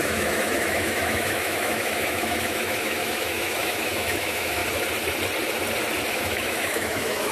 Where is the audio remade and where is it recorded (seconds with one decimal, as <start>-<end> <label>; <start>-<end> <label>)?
0.0-4.6 remade; 4.6-6.1 recorded; 6.1-7.3 remade